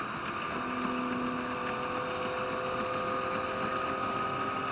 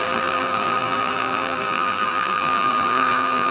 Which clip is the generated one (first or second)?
second